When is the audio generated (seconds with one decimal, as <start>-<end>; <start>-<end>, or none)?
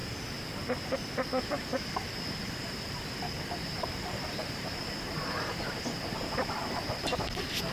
2.1-7.7